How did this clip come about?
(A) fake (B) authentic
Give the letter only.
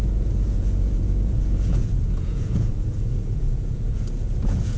A